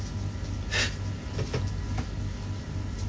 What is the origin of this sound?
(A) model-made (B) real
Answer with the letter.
B